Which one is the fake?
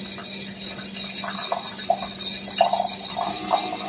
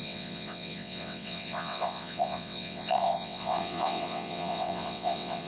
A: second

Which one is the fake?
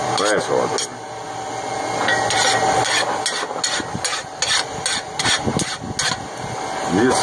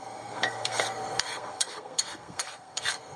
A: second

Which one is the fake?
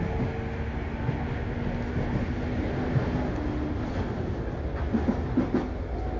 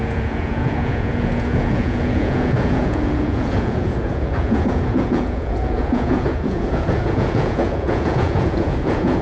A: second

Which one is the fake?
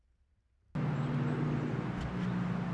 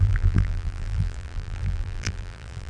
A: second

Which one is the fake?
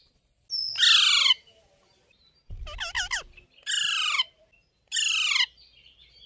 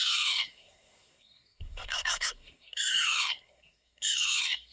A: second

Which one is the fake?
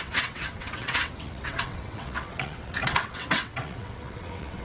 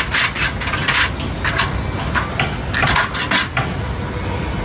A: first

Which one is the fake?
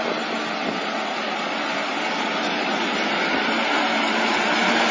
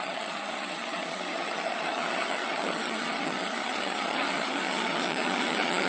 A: second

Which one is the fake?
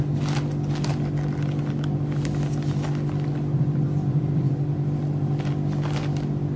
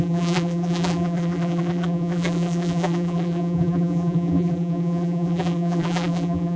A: second